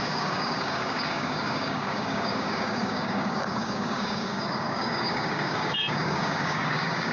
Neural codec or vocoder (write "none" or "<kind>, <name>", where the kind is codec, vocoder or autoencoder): codec, DAC